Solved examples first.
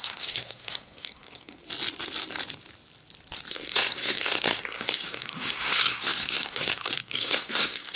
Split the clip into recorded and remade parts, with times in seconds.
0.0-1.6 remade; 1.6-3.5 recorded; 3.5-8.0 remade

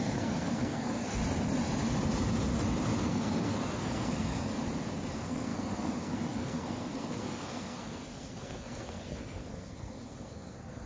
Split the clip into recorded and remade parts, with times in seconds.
0.0-1.2 remade; 1.2-3.0 recorded; 3.0-4.5 remade; 4.5-5.1 recorded; 5.1-10.9 remade

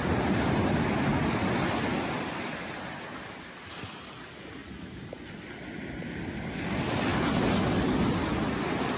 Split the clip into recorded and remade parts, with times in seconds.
0.0-9.0 recorded

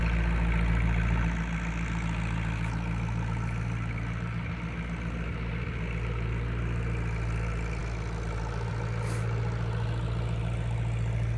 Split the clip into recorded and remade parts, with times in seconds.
0.0-11.4 recorded

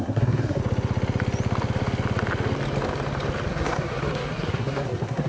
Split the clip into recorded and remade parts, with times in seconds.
0.0-0.6 remade; 0.6-3.5 recorded; 3.5-5.3 remade

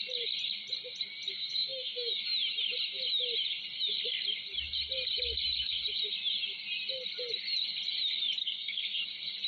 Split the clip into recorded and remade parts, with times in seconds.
0.0-1.3 recorded; 1.3-2.1 remade; 2.1-8.4 recorded; 8.4-9.0 remade; 9.0-9.5 recorded

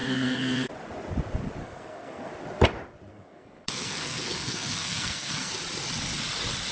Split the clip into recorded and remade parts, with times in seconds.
0.0-0.7 remade; 0.7-1.6 recorded; 1.6-2.3 remade; 2.3-3.1 recorded; 3.1-5.5 remade; 5.5-6.7 recorded